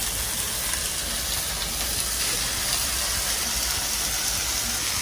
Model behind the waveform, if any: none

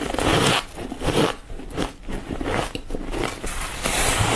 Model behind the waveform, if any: none